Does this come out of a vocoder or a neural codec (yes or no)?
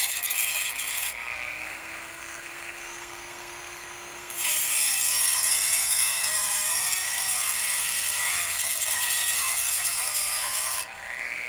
yes